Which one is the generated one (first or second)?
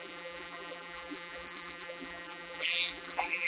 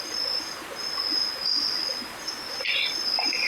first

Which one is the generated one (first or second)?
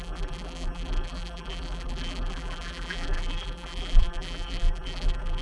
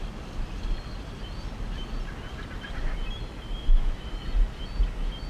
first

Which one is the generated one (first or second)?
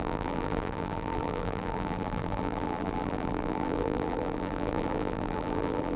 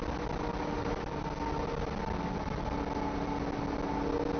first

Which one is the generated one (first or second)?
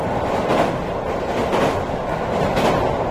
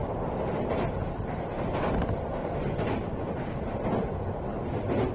second